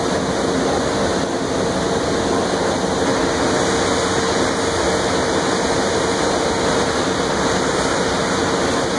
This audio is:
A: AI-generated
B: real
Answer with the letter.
B